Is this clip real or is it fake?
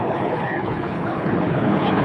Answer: fake